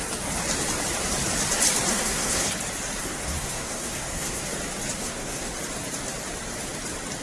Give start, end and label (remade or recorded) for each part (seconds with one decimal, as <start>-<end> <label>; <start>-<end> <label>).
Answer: 0.0-1.9 recorded; 1.9-2.5 remade; 2.5-3.0 recorded; 3.0-4.4 remade; 4.4-5.0 recorded; 5.0-5.5 remade; 5.5-7.2 recorded